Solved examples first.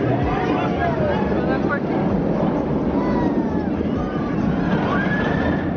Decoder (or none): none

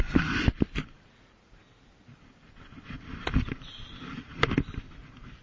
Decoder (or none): none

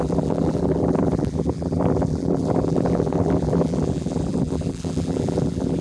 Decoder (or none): vocoder, BigVGAN v2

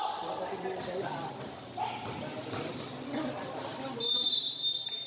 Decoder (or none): none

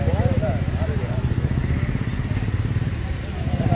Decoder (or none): none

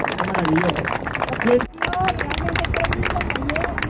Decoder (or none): none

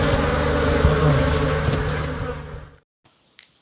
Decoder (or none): none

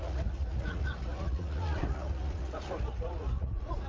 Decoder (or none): vocoder, Vocos